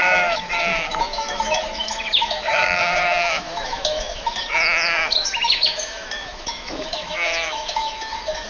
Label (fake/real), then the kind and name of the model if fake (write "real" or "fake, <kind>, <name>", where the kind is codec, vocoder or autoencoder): fake, autoencoder, DAC-VAE